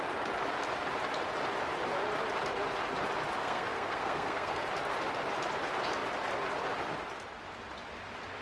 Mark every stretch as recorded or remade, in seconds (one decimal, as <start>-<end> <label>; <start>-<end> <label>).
0.0-3.4 recorded; 3.4-4.7 remade; 4.7-8.4 recorded